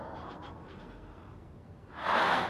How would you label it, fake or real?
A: fake